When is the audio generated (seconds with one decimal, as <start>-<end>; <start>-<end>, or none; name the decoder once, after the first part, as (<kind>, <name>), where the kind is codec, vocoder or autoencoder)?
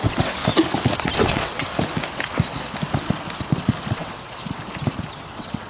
0.0-0.4 (vocoder, WaveNeXt); 1.2-1.7; 3.9-4.4; 5.2-5.7